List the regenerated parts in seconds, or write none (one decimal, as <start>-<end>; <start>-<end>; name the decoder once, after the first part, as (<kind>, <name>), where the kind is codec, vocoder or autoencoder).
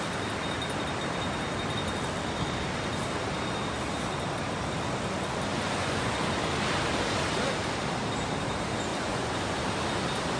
5.5-6.1 (vocoder, Vocos); 8.9-9.4